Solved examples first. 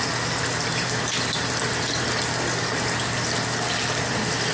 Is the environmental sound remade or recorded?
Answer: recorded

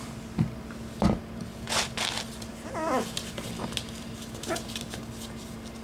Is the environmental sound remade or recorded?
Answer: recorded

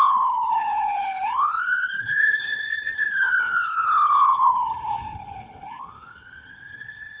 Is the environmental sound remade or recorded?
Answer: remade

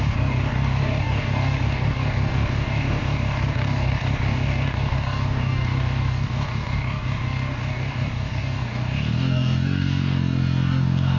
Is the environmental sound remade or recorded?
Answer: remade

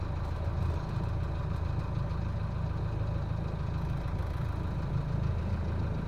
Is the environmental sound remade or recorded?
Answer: recorded